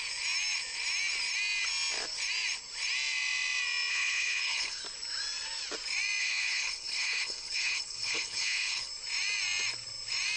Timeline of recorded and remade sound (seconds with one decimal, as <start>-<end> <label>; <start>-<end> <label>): 0.0-3.9 recorded; 3.9-4.8 remade; 4.8-6.2 recorded; 6.2-8.9 remade; 8.9-10.4 recorded